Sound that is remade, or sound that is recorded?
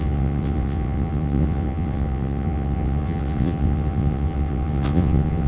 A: remade